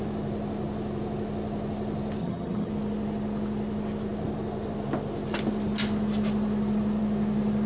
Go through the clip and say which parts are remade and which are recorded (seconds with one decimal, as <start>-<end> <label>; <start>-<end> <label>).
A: 0.0-2.2 recorded; 2.2-2.7 remade; 2.7-7.7 recorded